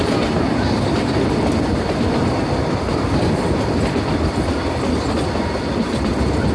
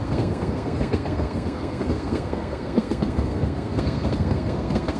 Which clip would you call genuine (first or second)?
first